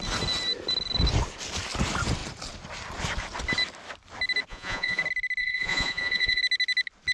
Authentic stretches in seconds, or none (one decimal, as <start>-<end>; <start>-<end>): 0.0-4.5; 5.0-5.4; 6.4-7.1